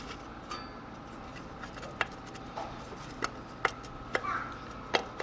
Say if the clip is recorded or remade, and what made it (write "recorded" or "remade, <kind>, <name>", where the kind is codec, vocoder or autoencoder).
recorded